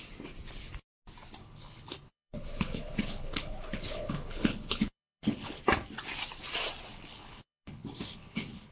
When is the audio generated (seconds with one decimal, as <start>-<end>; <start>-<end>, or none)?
1.4-5.6; 7.1-8.7